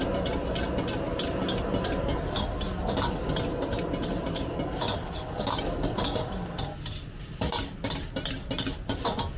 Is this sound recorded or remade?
recorded